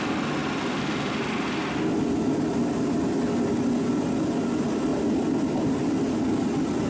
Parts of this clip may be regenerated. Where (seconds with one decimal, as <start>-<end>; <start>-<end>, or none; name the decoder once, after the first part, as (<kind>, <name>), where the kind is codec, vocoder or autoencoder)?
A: none